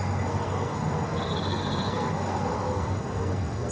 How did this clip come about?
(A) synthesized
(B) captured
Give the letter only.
A